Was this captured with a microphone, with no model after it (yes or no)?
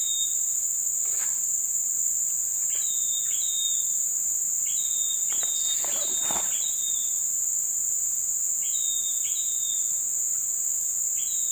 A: yes